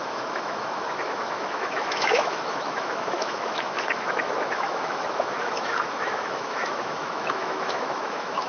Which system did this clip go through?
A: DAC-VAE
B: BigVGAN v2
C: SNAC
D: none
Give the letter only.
A